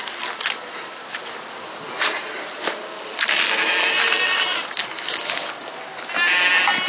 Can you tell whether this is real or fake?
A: real